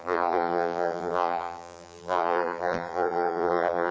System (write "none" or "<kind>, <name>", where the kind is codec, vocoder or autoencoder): vocoder, BigVGAN v2